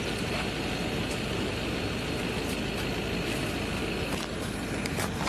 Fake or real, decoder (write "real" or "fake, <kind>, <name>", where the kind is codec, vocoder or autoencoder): real